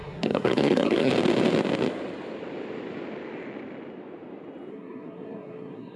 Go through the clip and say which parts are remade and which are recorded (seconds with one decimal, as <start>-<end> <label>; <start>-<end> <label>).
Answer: 0.0-1.1 remade; 1.1-4.7 recorded; 4.7-6.0 remade